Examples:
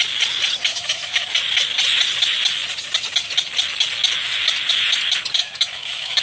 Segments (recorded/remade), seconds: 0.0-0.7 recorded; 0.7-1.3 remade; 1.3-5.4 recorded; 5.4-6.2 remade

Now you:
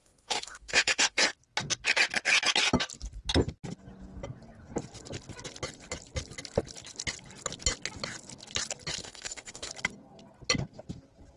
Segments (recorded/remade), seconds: 0.0-1.2 remade; 1.2-9.0 recorded; 9.0-9.7 remade; 9.7-11.4 recorded

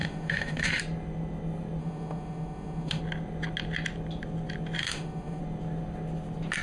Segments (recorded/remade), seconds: 0.0-0.8 remade; 0.8-1.8 recorded; 1.8-3.0 remade; 3.0-4.8 recorded; 4.8-5.4 remade; 5.4-6.6 recorded

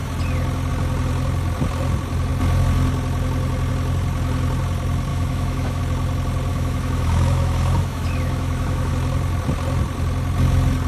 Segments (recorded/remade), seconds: 0.0-5.1 recorded; 5.1-5.8 remade; 5.8-6.5 recorded; 6.5-8.9 remade; 8.9-10.9 recorded

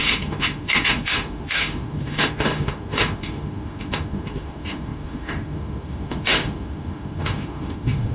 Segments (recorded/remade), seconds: 0.0-8.1 remade

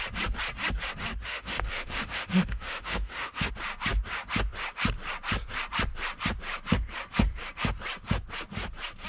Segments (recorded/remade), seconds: 0.0-1.3 recorded; 1.3-3.5 remade; 3.5-9.1 recorded

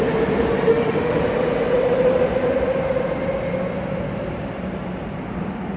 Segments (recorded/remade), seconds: 0.0-0.7 recorded; 0.7-1.2 remade; 1.2-5.8 recorded

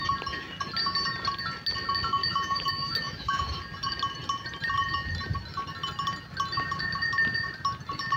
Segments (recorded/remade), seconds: 0.0-2.2 recorded; 2.2-3.6 remade; 3.6-8.2 recorded